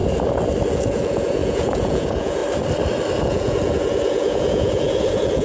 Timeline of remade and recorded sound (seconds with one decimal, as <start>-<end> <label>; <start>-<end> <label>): 0.0-0.7 recorded; 0.7-2.4 remade; 2.4-3.2 recorded; 3.2-5.4 remade